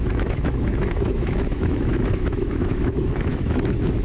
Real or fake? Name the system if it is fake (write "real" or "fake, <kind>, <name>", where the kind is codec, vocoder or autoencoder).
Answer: fake, autoencoder, DAC-VAE